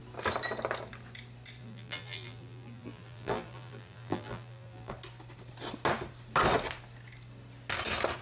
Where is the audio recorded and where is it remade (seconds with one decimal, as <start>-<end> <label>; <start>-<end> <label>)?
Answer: 0.0-1.6 recorded; 1.6-4.9 remade; 4.9-8.2 recorded